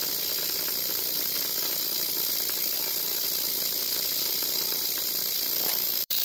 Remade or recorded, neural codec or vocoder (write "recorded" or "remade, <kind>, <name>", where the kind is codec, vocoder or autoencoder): remade, vocoder, BigVGAN v2